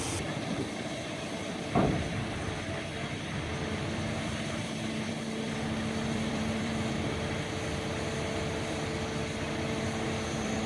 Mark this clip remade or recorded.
remade